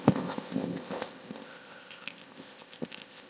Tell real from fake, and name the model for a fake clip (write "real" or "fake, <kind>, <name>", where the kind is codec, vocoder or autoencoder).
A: fake, codec, ZipCodec